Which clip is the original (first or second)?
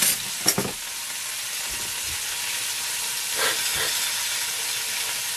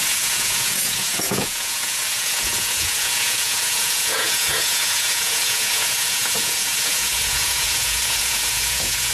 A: first